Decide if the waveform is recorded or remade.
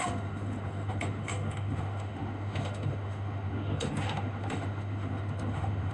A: remade